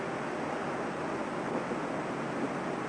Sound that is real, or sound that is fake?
real